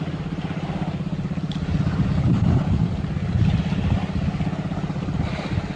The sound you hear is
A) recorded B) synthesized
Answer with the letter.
A